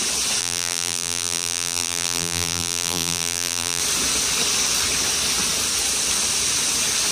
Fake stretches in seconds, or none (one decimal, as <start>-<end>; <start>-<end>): 0.4-3.8